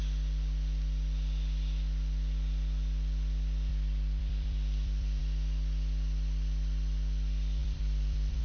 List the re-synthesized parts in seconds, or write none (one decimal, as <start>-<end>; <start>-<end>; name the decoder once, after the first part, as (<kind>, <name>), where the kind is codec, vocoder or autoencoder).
3.7-5.2 (vocoder, BigVGAN v2); 7.6-8.4